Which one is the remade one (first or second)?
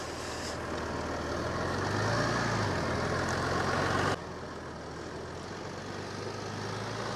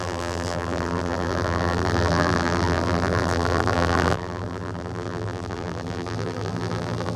second